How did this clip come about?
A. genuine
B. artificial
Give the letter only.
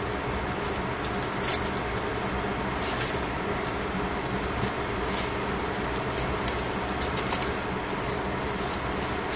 A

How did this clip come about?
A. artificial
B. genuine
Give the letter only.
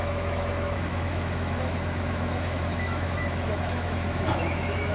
A